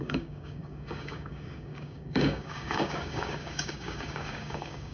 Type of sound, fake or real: fake